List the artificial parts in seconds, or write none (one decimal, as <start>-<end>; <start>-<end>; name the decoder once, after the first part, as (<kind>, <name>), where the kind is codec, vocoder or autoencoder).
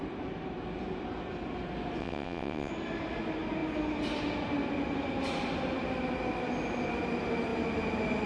2.0-2.7 (vocoder, WaveNeXt)